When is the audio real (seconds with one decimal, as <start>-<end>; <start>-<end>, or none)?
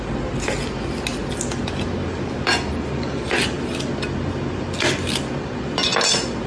0.0-6.5